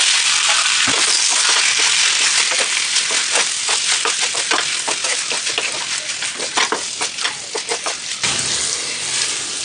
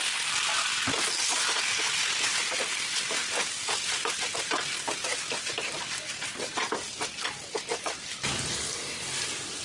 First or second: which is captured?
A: first